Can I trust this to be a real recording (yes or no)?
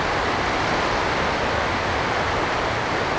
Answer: yes